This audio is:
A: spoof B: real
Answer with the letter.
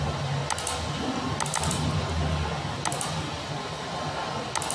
B